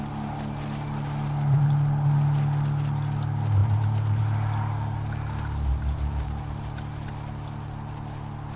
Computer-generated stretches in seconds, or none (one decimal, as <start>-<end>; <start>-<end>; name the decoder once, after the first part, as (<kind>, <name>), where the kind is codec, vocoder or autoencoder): none